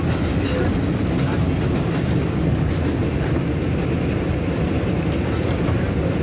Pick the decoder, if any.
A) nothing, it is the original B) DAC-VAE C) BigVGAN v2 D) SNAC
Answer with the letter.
A